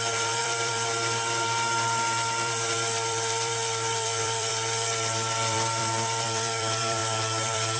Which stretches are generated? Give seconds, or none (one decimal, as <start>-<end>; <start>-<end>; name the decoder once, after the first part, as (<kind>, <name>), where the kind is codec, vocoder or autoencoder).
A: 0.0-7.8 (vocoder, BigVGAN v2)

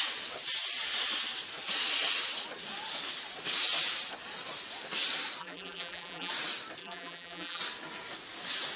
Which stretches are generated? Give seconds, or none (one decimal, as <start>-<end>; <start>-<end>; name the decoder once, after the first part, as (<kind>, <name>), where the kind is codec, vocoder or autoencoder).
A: 5.4-6.3 (vocoder, BigVGAN v2); 6.8-7.6

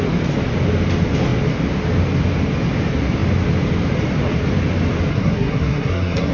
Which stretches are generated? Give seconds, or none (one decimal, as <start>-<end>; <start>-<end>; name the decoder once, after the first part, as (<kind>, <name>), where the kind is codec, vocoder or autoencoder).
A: 5.1-6.3 (codec, SNAC)

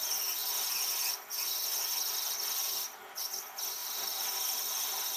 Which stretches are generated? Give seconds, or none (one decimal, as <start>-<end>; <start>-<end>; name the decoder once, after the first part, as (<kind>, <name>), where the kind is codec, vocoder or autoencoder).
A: none

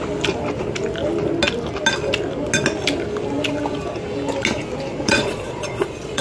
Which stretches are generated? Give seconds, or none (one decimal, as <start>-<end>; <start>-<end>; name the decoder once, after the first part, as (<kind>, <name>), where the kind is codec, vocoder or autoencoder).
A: 4.9-6.2 (vocoder, Vocos)

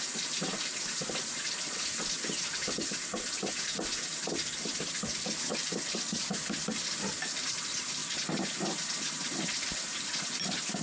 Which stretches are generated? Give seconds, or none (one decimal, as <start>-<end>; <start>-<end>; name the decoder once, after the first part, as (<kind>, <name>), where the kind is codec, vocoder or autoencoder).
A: 0.0-8.0 (vocoder, BigVGAN v2); 8.9-10.8